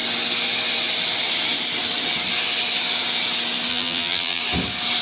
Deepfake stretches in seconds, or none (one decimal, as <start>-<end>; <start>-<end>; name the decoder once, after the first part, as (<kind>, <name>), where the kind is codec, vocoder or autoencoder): 3.7-4.4 (vocoder, BigVGAN v2)